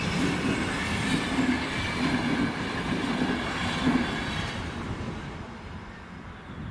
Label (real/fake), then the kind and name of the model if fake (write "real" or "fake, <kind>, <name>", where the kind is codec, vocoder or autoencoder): real